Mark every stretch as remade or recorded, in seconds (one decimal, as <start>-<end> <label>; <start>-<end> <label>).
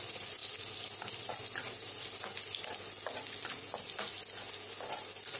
0.0-5.4 recorded